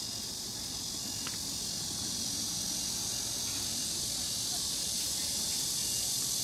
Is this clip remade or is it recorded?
recorded